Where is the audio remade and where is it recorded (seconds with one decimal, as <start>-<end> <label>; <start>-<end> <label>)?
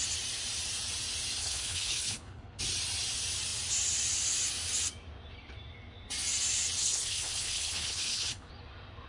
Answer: 0.0-1.4 recorded; 1.4-2.6 remade; 2.6-6.8 recorded; 6.8-8.5 remade; 8.5-9.1 recorded